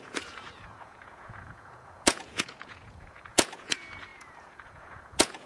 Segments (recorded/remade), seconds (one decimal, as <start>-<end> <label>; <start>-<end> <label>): 0.0-5.5 remade